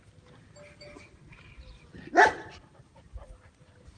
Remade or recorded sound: recorded